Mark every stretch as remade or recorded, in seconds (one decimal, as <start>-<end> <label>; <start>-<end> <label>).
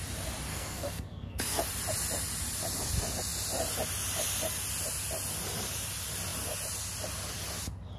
0.0-0.5 recorded; 0.5-1.6 remade; 1.6-8.0 recorded